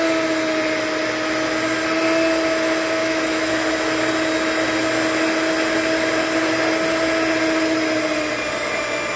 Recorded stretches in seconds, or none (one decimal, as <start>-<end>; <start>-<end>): 0.0-3.0; 3.5-9.2